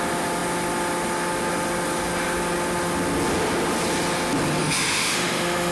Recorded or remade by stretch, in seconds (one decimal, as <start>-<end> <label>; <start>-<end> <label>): 0.0-4.6 recorded; 4.6-5.7 remade